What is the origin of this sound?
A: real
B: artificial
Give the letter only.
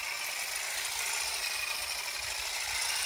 A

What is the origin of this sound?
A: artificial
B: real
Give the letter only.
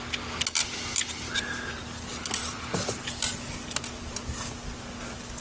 B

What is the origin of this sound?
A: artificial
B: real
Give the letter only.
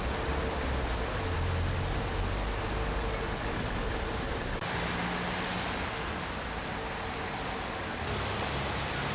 B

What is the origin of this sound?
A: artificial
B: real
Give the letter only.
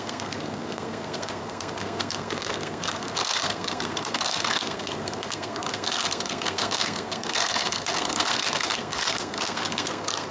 A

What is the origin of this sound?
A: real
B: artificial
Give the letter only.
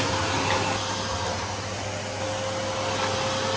A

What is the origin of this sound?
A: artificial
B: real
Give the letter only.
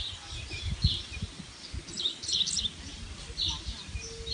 B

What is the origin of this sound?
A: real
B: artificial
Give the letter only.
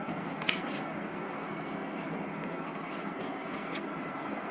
B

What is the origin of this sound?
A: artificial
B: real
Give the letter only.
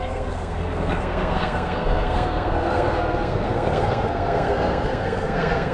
A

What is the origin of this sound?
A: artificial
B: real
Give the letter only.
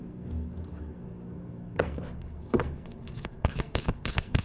A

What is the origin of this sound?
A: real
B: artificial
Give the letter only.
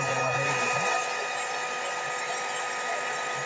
A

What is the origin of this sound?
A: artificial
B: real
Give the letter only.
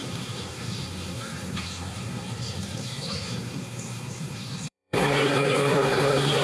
A